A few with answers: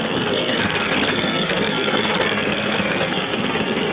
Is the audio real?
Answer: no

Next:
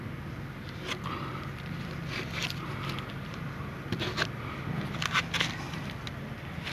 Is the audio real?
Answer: yes